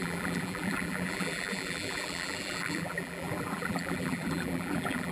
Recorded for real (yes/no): no